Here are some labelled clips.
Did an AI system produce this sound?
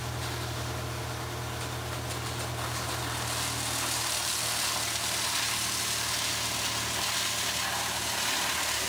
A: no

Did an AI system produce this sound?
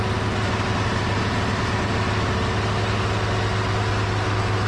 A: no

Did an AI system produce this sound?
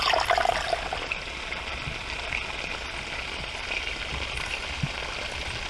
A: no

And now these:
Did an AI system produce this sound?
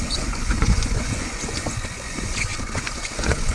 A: yes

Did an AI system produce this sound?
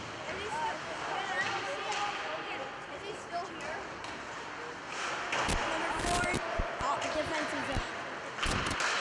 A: no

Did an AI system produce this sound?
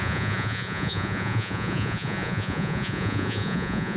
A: yes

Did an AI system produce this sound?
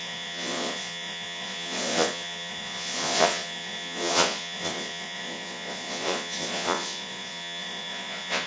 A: yes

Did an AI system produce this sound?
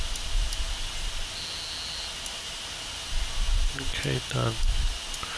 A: no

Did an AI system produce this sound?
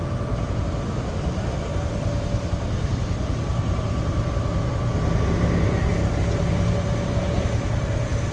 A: no